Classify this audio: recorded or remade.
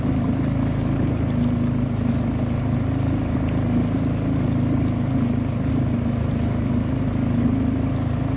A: recorded